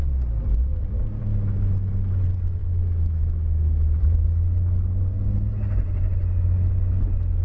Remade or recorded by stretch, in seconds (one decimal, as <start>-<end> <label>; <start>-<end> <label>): 0.0-2.6 recorded; 2.6-4.0 remade; 4.0-7.4 recorded